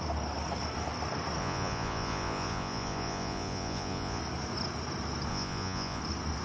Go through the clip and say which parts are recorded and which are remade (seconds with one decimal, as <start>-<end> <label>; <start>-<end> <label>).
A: 0.0-1.4 recorded; 1.4-4.2 remade; 4.2-5.3 recorded; 5.3-6.0 remade; 6.0-6.4 recorded